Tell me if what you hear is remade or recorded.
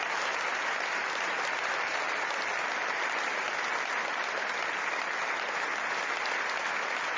recorded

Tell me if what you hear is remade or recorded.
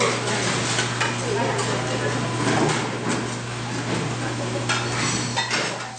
recorded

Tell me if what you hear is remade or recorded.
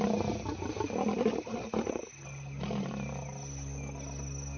recorded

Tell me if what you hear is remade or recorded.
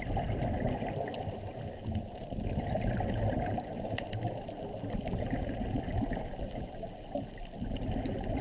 recorded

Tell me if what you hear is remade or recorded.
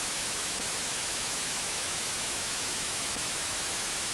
remade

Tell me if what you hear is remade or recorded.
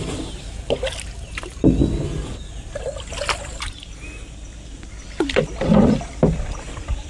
recorded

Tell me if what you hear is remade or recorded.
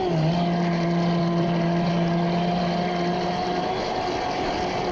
recorded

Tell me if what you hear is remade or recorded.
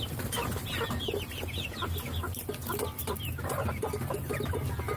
recorded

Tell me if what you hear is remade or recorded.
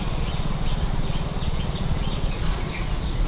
remade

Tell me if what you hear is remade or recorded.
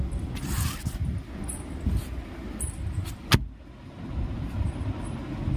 recorded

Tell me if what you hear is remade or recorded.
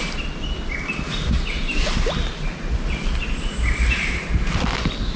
recorded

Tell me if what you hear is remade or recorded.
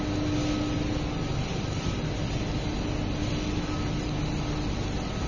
recorded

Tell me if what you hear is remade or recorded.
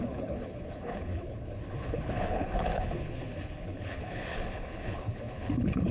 remade